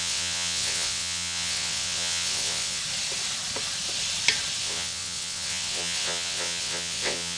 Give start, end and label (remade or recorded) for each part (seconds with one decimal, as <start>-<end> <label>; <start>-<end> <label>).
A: 0.0-2.8 remade; 2.8-4.6 recorded; 4.6-7.4 remade